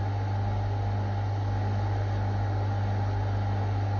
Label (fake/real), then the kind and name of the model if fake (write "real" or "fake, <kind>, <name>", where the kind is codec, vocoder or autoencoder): real